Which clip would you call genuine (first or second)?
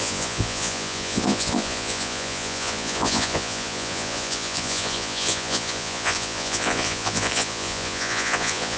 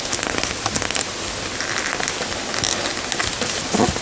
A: second